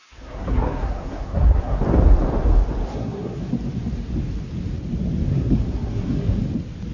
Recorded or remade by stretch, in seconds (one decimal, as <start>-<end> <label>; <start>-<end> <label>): 0.0-1.8 remade; 1.8-2.9 recorded; 2.9-3.5 remade; 3.5-5.3 recorded; 5.3-6.4 remade; 6.4-6.9 recorded